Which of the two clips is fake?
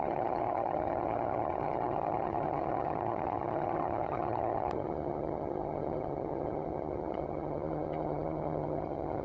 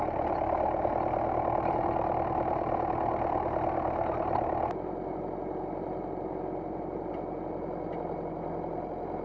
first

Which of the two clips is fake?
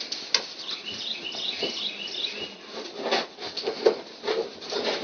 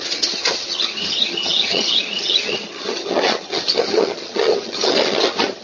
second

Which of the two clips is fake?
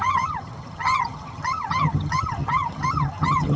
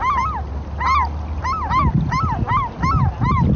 first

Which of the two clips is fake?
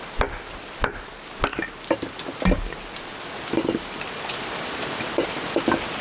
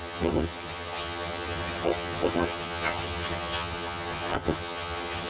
second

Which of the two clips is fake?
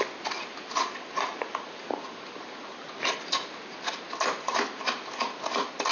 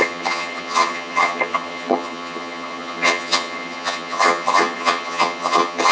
second